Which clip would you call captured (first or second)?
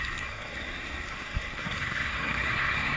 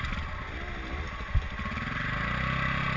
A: second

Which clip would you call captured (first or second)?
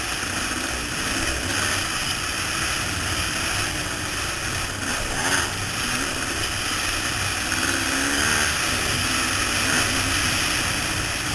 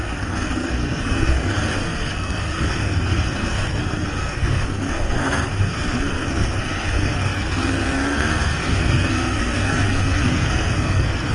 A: first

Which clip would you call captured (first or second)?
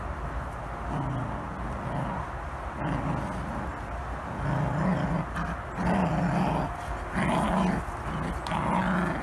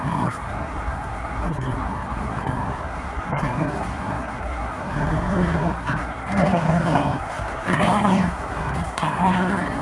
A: first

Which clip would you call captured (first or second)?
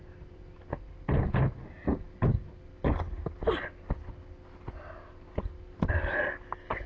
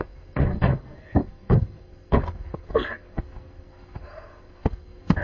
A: first